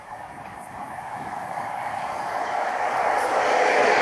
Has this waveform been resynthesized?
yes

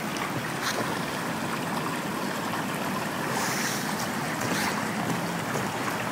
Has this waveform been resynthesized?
no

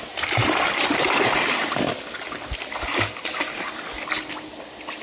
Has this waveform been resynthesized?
no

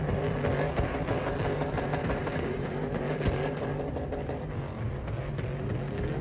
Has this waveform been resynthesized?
no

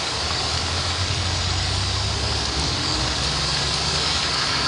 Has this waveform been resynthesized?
yes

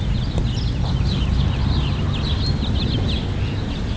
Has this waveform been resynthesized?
no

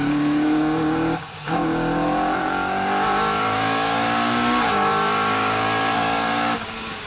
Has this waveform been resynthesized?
yes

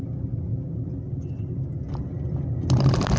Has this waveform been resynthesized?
no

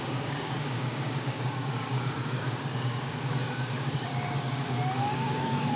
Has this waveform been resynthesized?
yes